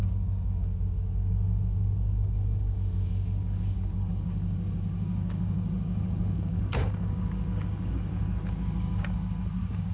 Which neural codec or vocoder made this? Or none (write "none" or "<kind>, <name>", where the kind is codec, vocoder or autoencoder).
codec, DAC